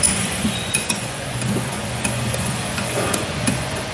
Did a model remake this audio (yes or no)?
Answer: yes